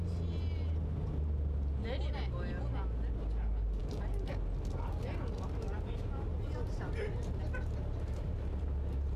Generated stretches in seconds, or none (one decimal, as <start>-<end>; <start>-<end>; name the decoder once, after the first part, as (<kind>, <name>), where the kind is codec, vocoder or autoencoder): none